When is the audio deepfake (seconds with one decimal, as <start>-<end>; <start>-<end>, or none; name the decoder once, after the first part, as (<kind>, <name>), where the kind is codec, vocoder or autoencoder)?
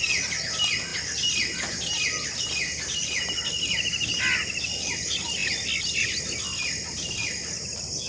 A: none